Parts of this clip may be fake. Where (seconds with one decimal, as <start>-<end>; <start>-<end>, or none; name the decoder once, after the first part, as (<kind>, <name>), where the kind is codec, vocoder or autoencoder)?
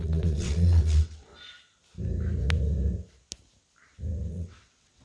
0.0-1.3 (vocoder, WaveNeXt); 4.3-5.0